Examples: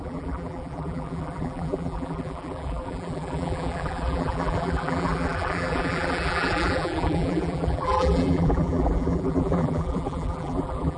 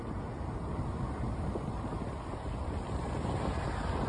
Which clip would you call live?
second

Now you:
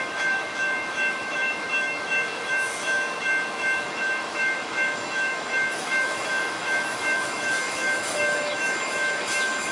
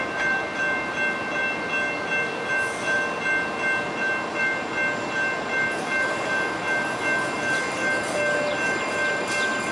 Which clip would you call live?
second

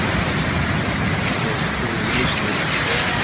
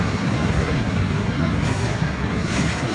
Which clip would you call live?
first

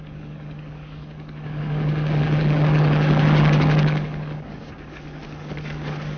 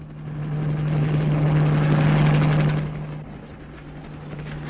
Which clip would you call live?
second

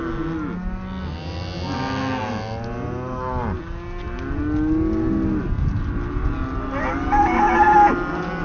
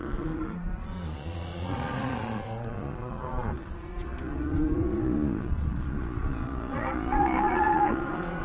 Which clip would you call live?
first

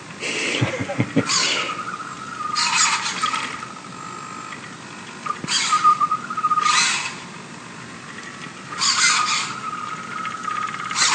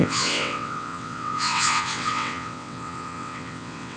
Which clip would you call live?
first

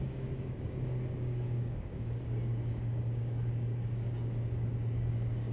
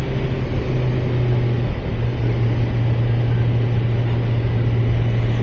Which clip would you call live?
second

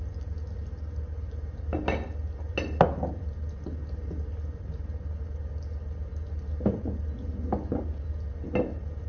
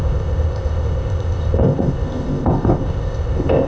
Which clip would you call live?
first